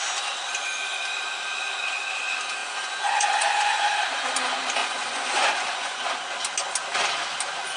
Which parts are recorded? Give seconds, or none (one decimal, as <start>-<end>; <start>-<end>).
0.0-2.6; 3.9-4.8; 6.0-7.8